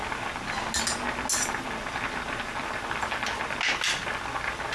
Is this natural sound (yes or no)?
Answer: yes